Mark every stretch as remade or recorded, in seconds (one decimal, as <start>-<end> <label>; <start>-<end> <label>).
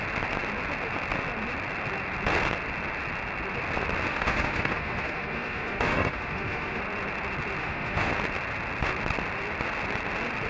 0.0-4.1 recorded; 4.1-6.8 remade; 6.8-7.6 recorded; 7.6-8.1 remade; 8.1-10.5 recorded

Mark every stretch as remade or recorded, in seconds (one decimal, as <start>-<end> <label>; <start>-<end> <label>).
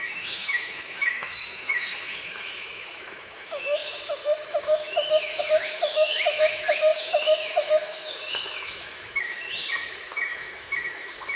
0.0-11.4 remade